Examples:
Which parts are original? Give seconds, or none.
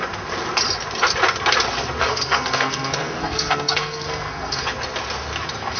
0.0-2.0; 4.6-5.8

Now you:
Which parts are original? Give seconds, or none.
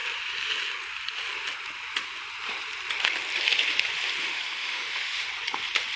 0.0-4.2; 5.3-6.0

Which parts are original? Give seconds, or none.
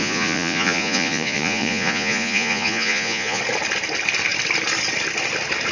3.4-5.7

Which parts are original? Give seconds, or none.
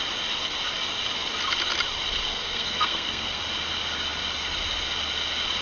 0.0-2.3; 3.4-5.6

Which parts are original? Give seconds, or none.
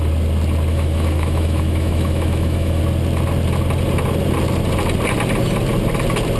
0.0-0.7; 2.8-6.4